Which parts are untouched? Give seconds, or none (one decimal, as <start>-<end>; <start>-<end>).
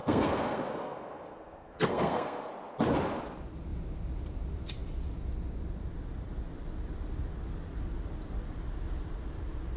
2.5-9.8